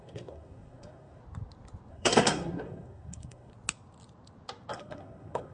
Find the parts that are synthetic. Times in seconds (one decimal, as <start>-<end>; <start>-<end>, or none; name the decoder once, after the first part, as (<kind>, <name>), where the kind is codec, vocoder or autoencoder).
0.0-1.2 (codec, SNAC); 1.9-3.5; 4.7-5.5